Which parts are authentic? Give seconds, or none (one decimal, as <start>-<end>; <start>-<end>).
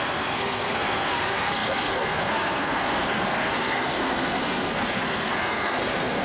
none